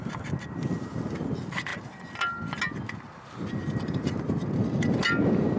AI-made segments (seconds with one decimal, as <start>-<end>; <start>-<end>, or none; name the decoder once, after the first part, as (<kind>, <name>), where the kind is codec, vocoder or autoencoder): 3.6-4.1 (vocoder, BigVGAN v2)